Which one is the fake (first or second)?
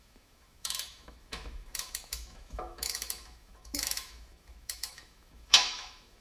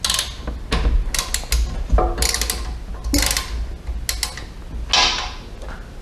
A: first